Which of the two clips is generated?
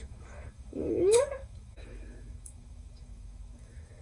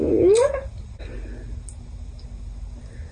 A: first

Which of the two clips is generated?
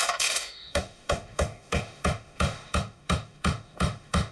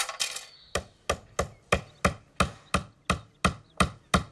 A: first